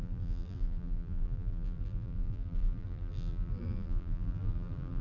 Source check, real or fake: fake